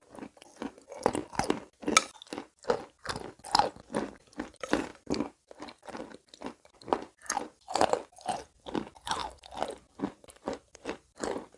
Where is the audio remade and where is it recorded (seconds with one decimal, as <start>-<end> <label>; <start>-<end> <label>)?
0.0-1.2 remade; 1.2-4.4 recorded; 4.4-11.6 remade